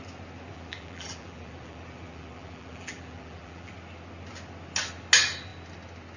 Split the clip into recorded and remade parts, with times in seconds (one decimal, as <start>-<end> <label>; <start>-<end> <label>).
0.0-0.5 recorded; 0.5-3.7 remade; 3.7-6.2 recorded